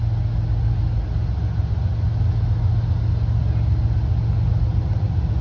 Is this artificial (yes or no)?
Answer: no